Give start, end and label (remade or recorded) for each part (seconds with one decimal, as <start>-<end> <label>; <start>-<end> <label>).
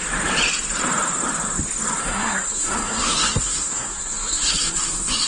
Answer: 0.0-2.0 recorded; 2.0-5.3 remade